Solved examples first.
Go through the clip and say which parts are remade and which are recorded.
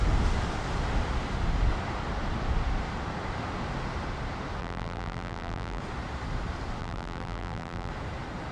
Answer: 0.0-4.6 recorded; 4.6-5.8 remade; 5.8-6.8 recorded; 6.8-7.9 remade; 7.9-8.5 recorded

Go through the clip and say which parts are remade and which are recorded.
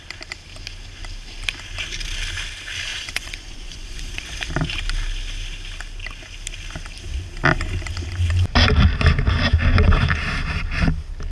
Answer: 0.0-2.9 recorded; 2.9-4.2 remade; 4.2-11.3 recorded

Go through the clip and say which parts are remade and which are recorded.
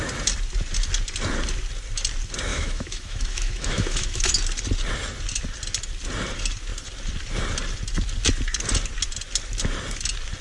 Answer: 0.0-2.5 recorded; 2.5-4.3 remade; 4.3-10.4 recorded